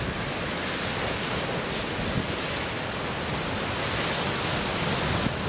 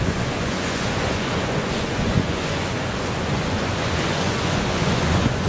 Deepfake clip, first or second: second